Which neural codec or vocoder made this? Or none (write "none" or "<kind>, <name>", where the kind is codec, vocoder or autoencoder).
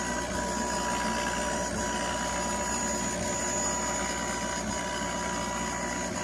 none